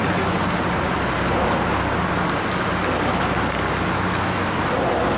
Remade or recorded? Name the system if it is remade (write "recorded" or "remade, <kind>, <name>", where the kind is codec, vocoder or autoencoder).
recorded